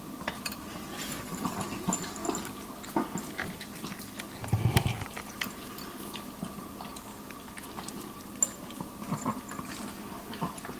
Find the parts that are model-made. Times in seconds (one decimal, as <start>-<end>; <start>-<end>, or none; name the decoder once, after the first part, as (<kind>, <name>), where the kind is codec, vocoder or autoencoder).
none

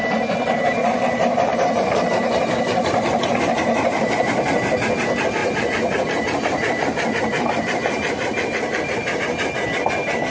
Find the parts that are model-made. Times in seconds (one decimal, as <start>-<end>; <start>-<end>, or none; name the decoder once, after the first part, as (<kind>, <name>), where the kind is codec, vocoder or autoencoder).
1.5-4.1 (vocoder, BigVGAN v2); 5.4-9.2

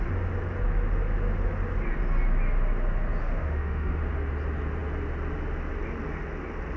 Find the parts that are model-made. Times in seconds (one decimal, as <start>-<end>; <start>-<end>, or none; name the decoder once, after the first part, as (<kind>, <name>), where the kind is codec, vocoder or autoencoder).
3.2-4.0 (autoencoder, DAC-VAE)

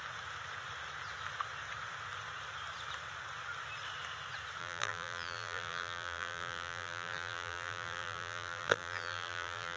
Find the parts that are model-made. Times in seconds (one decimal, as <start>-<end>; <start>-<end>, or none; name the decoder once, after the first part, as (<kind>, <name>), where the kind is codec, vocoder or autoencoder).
4.6-9.8 (vocoder, BigVGAN v2)

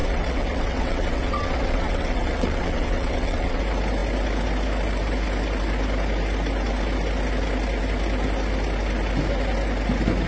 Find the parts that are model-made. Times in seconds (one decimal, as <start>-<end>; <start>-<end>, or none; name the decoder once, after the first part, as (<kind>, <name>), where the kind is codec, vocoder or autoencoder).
0.0-3.6 (vocoder, WaveNeXt)

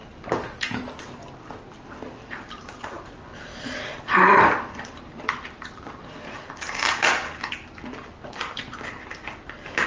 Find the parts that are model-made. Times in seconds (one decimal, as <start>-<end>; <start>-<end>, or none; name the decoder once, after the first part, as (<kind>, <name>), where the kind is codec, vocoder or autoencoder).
0.0-0.8 (vocoder, BigVGAN v2); 2.2-7.5

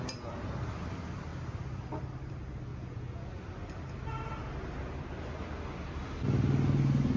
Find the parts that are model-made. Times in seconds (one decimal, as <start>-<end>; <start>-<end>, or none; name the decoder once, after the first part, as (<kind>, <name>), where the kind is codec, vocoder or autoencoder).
2.7-3.3 (vocoder, Vocos)